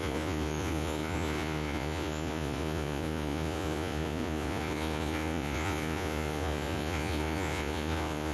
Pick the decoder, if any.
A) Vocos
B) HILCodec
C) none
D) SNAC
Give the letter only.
A